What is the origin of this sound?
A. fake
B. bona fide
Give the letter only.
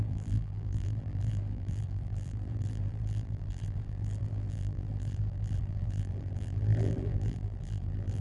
A